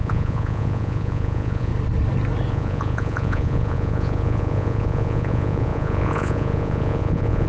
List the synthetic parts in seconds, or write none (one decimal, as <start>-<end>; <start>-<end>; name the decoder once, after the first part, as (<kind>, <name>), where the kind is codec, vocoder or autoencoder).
0.0-1.7 (vocoder, Vocos); 2.5-7.5